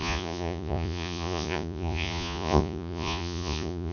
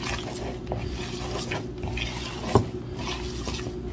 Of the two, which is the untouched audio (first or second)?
second